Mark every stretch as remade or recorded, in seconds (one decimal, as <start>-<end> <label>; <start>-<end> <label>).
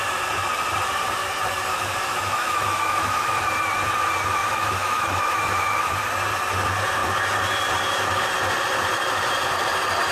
0.0-1.7 recorded; 1.7-3.4 remade; 3.4-4.4 recorded; 4.4-5.9 remade; 5.9-10.1 recorded